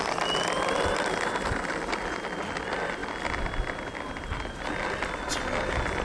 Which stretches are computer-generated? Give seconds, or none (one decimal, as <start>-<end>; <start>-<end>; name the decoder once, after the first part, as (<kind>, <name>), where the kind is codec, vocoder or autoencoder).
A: none